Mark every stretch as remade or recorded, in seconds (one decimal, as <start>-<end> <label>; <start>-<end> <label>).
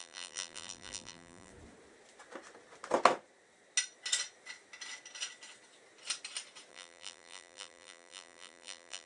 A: 0.0-1.5 remade; 1.5-6.7 recorded; 6.7-9.1 remade